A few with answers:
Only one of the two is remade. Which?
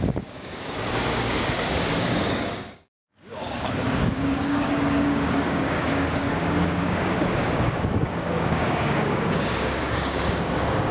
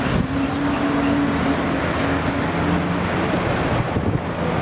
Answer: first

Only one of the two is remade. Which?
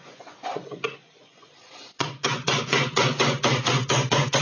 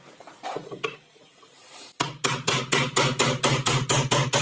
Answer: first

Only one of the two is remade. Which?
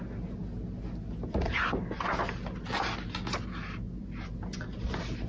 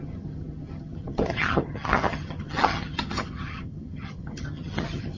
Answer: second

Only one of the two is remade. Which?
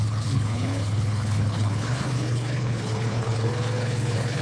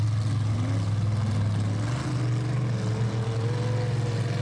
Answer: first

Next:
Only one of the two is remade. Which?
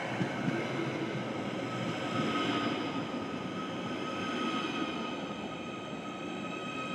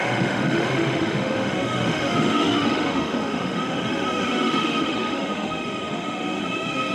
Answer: second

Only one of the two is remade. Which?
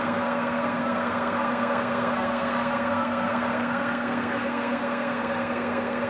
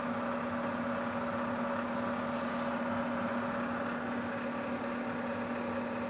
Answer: first